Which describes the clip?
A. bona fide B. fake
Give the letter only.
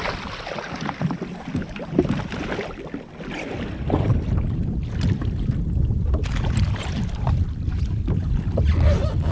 A